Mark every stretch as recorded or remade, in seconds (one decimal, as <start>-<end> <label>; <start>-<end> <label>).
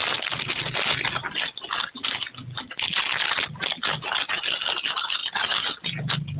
0.0-6.4 recorded